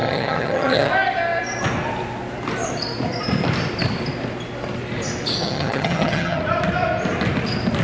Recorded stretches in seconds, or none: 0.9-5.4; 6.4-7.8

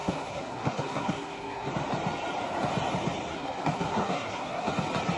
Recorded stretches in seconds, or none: 1.7-3.3; 4.7-5.2

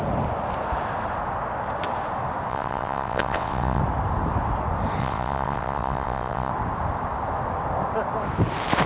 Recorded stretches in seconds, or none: 0.0-2.5; 3.8-5.0; 6.5-8.9

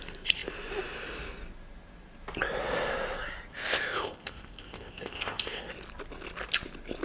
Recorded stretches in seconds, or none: 0.0-3.5; 5.6-7.0